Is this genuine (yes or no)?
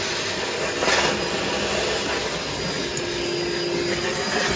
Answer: yes